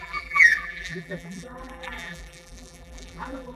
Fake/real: fake